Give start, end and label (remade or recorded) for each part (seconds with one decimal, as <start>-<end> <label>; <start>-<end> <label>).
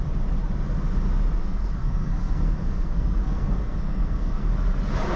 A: 0.0-1.4 recorded; 1.4-4.5 remade; 4.5-5.2 recorded